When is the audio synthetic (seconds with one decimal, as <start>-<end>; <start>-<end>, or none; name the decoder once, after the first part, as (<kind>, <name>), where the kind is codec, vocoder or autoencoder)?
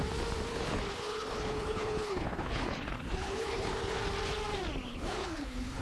0.5-4.0 (codec, HILCodec); 4.9-5.8